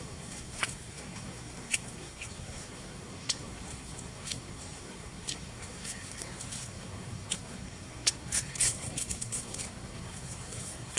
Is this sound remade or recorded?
remade